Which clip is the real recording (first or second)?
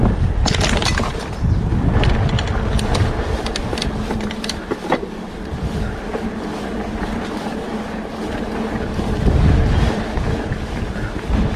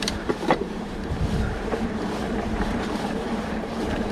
first